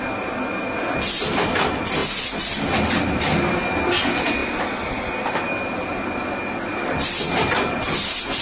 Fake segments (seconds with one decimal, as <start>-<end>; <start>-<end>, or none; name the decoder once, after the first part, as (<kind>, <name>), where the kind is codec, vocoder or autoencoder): none